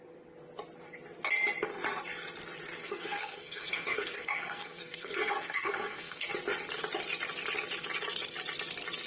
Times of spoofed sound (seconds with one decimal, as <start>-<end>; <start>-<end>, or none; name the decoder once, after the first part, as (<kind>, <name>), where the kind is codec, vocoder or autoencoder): 2.8-6.3 (codec, SNAC)